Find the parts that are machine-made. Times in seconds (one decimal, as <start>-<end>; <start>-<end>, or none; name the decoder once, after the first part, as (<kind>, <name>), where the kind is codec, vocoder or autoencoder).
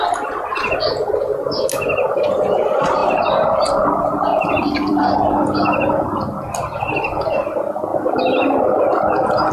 4.3-5.0 (vocoder, BigVGAN v2)